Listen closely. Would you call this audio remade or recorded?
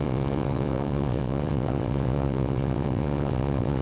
remade